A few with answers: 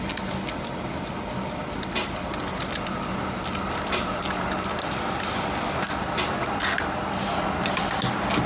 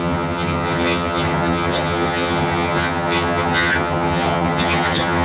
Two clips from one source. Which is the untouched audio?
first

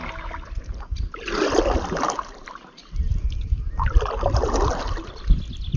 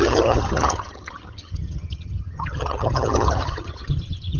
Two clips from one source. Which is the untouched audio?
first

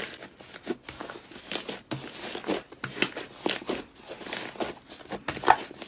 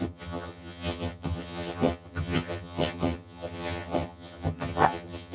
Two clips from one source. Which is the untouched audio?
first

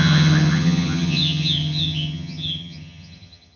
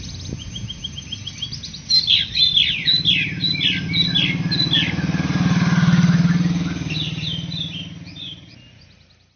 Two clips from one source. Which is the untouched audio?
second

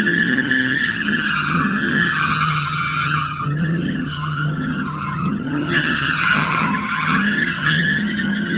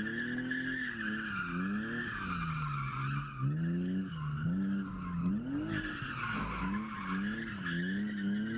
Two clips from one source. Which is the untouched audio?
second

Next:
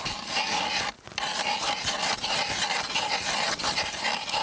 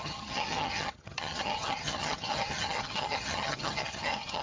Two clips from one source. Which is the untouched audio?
first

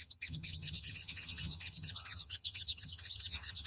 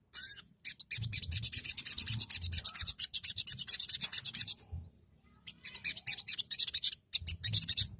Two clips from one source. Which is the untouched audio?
second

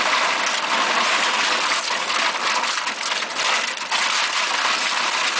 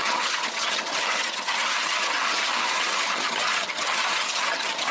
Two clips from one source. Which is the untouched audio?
first